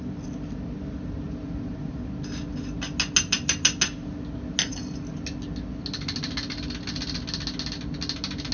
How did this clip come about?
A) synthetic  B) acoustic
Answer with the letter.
B